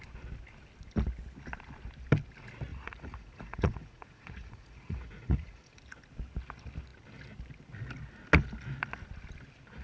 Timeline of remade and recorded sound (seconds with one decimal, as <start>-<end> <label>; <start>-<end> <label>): 0.0-2.7 recorded; 2.7-5.8 remade; 5.8-9.8 recorded